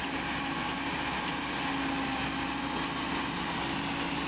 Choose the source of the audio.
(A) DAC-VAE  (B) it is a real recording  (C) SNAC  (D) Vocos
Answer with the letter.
B